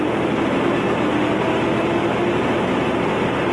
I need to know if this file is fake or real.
real